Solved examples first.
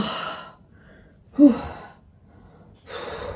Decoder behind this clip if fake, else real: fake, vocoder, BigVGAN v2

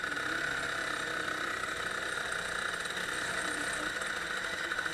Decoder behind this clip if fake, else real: real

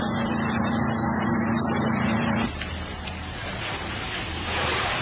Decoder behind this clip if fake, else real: fake, vocoder, BigVGAN v2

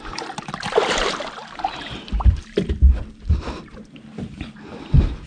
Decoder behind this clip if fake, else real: fake, vocoder, BigVGAN v2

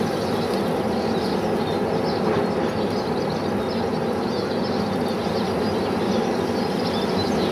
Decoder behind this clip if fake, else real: real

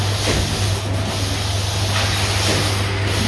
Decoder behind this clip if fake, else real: real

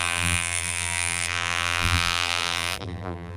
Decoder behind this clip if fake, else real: fake, vocoder, BigVGAN v2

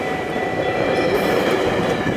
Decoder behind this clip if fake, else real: fake, vocoder, BigVGAN v2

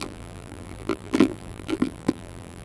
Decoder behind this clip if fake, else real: fake, vocoder, BigVGAN v2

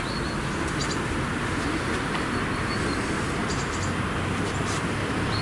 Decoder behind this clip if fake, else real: real